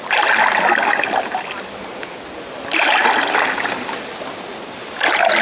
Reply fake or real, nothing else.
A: real